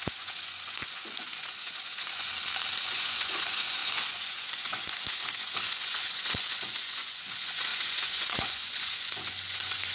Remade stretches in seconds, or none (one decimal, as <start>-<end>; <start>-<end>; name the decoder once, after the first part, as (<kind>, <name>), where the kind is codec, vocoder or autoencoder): 0.0-2.3 (vocoder, Vocos); 2.8-9.9